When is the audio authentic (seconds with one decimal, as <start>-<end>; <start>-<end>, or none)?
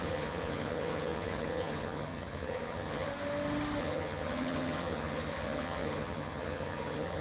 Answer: 3.1-3.8